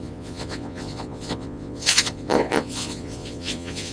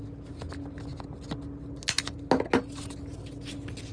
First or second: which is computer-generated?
first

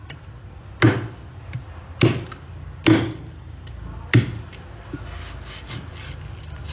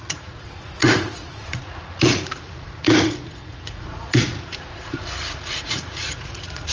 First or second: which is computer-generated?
second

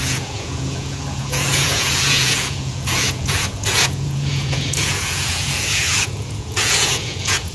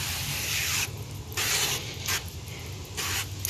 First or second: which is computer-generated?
first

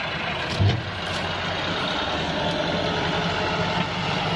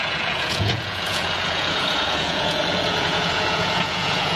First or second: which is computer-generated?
second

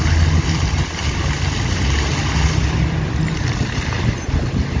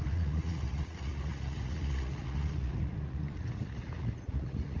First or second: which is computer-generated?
second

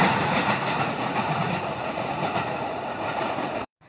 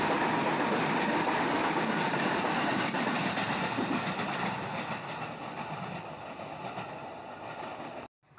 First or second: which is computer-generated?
first